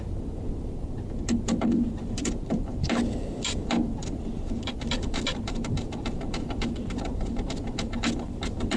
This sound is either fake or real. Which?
fake